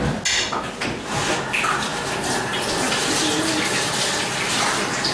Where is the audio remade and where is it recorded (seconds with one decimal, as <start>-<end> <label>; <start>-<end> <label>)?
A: 0.0-5.1 recorded